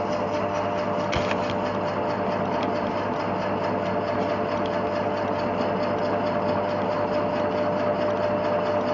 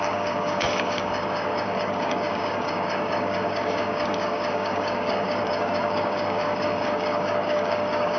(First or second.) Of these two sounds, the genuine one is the first